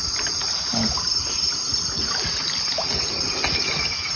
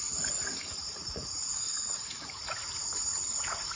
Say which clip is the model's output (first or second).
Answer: second